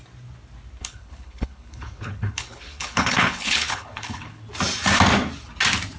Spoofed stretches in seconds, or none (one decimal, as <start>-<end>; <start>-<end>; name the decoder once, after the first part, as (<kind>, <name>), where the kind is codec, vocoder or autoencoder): 0.8-4.4 (codec, HILCodec)